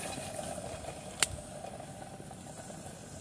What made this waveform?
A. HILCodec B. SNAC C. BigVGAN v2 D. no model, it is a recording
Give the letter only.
D